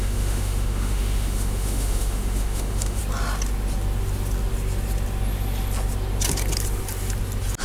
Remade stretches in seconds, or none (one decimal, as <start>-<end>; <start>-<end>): 0.0-3.0